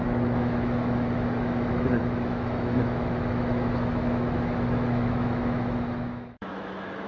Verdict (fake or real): fake